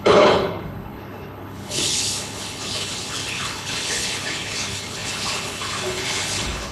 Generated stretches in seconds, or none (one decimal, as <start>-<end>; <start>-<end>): 0.0-6.7